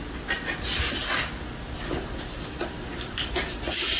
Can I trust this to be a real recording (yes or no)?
yes